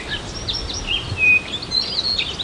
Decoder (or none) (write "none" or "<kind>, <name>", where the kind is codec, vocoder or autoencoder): none